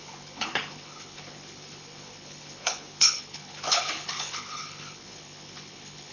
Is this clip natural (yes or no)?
no